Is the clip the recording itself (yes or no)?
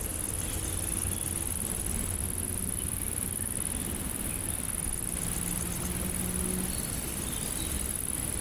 yes